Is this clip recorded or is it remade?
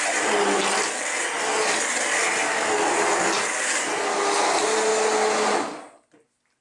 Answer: recorded